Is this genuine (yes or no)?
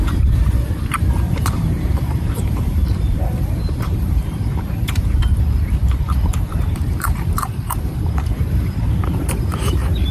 no